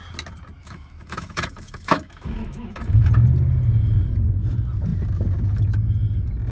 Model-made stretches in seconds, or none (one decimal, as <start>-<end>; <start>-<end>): 0.6-3.1